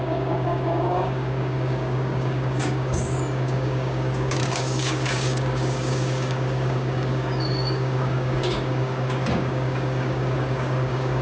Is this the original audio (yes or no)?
no